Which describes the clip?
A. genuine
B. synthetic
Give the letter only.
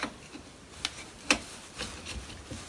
A